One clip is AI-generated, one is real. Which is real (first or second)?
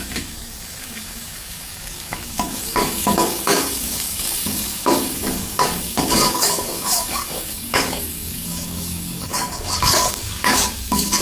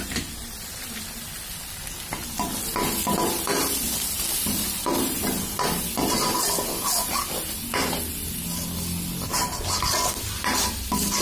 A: second